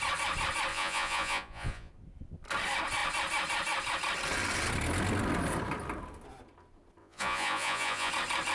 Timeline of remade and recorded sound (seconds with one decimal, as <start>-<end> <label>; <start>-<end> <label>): 0.0-0.7 recorded; 0.7-1.9 remade; 1.9-7.0 recorded; 7.0-8.1 remade; 8.1-8.5 recorded